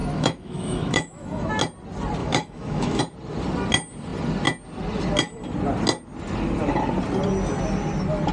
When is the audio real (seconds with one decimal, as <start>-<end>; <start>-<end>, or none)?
1.5-2.2; 3.0-8.3